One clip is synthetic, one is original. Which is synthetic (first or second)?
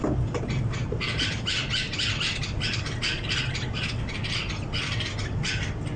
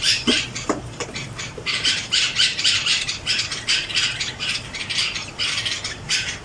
second